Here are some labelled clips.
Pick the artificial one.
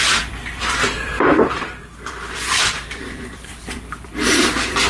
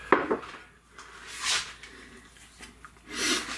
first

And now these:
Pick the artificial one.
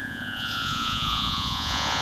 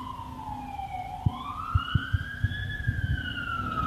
first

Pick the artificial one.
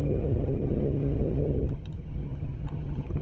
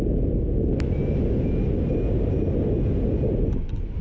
first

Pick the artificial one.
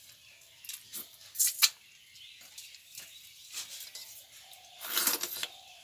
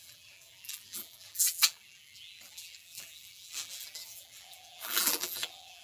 second